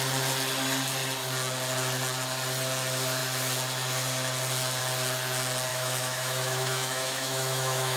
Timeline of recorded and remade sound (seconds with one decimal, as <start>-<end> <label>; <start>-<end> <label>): 0.0-5.7 recorded; 5.7-8.0 remade